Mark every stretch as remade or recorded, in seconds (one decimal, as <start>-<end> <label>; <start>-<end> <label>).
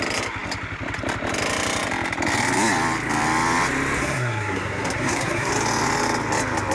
0.0-4.0 recorded; 4.0-5.5 remade; 5.5-6.7 recorded